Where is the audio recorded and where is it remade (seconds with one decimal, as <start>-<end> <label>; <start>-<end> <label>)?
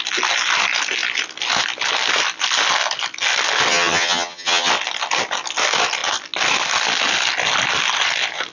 0.0-3.7 recorded; 3.7-4.7 remade; 4.7-8.5 recorded